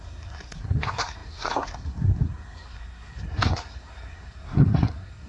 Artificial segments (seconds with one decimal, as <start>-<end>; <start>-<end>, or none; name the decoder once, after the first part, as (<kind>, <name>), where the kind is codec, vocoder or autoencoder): 0.0-5.3 (codec, SNAC)